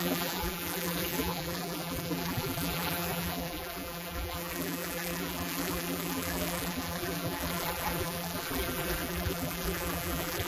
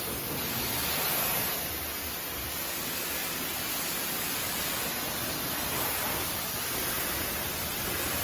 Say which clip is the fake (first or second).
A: first